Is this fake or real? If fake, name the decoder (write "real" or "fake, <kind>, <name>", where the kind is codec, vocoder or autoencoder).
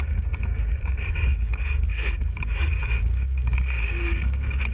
fake, codec, DAC